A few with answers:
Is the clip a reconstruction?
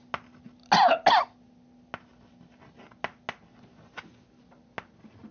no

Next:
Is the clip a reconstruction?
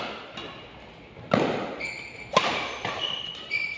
no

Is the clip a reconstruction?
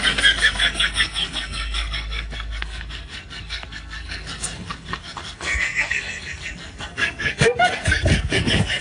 yes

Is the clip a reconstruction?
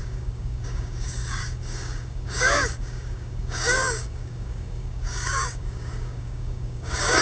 yes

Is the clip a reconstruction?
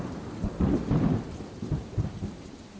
yes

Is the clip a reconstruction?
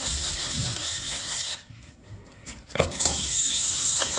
yes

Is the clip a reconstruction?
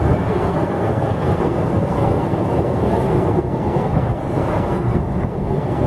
yes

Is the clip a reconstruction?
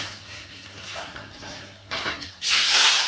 yes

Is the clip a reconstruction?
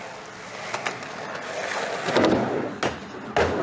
no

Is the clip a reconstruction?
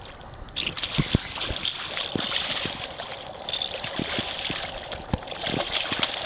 no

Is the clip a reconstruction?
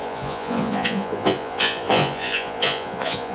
yes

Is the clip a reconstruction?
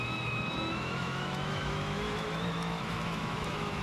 yes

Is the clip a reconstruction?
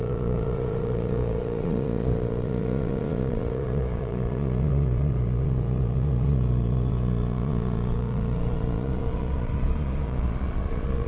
yes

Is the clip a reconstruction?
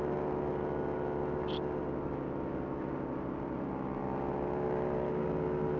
no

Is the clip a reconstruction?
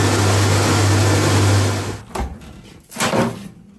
no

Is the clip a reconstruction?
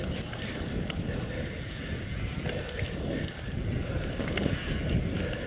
no